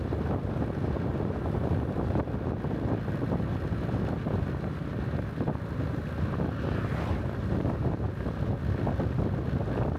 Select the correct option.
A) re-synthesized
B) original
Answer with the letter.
B